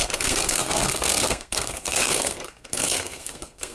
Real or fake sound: fake